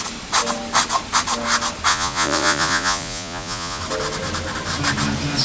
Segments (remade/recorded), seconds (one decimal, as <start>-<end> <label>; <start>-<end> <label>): 0.0-1.9 recorded; 1.9-3.8 remade; 3.8-5.4 recorded